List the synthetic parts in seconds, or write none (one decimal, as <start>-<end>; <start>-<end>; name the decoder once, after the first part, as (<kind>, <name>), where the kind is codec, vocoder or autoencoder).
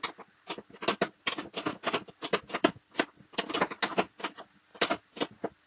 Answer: 1.7-3.6 (vocoder, BigVGAN v2); 4.7-5.7